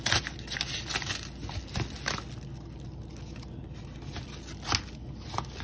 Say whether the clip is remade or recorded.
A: recorded